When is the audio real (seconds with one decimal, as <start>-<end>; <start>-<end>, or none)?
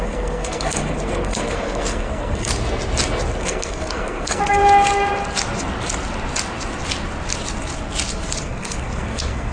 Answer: 2.5-3.4; 4.6-8.4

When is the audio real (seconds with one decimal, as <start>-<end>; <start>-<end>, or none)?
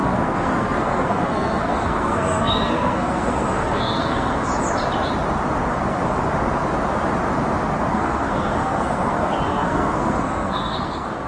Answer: 4.5-5.7; 6.2-7.9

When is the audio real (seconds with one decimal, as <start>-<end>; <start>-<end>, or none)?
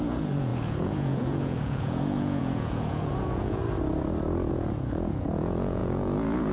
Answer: 3.6-4.5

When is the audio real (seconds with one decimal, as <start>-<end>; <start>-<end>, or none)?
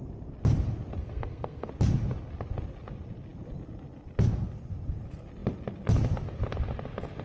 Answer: 0.0-1.0; 1.7-7.2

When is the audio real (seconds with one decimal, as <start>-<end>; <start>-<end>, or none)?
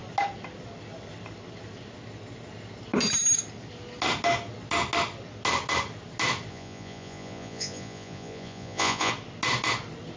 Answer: 0.0-6.5; 9.1-10.2